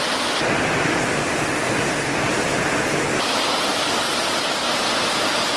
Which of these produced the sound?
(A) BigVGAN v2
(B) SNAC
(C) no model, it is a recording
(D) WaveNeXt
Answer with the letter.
C